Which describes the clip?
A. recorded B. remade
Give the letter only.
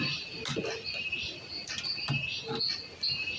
A